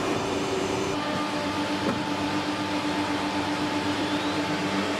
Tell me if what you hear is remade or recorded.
remade